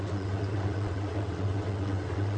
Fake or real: fake